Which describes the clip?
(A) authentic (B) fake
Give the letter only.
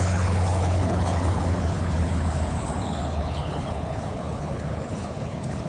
B